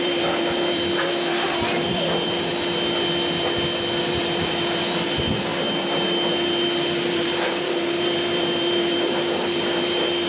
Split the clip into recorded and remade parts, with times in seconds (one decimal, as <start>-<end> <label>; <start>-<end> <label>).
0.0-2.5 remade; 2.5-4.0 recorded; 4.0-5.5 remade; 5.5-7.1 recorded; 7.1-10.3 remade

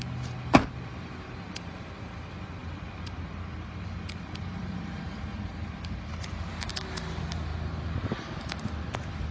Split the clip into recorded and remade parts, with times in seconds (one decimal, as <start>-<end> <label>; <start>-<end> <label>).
0.0-2.6 recorded; 2.6-6.7 remade; 6.7-9.3 recorded

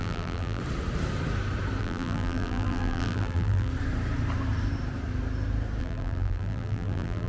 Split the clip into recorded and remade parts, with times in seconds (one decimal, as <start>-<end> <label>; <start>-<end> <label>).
0.0-0.6 remade; 0.6-1.8 recorded; 1.8-3.7 remade; 3.7-5.8 recorded; 5.8-7.3 remade

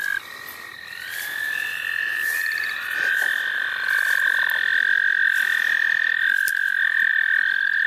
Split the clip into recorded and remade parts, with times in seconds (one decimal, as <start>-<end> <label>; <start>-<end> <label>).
0.0-0.7 recorded; 0.7-3.2 remade; 3.2-7.9 recorded

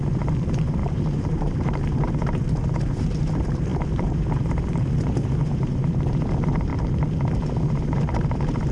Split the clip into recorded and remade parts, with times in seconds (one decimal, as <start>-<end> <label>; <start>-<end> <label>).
0.0-6.7 remade; 6.7-7.8 recorded; 7.8-8.7 remade

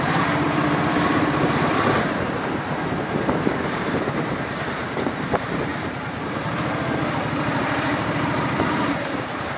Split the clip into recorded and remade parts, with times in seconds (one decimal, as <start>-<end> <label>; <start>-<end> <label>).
0.0-9.6 remade

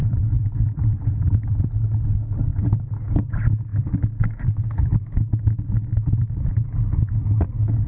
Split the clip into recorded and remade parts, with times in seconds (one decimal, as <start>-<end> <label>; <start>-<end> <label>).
0.0-1.7 remade; 1.7-7.9 recorded

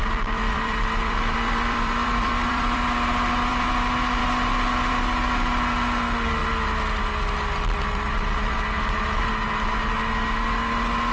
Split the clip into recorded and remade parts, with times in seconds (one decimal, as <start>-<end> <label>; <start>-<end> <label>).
0.0-3.7 remade; 3.7-11.1 recorded